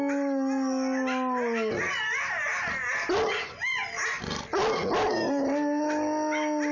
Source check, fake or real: real